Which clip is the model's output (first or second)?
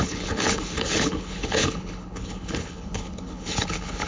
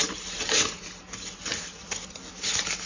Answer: first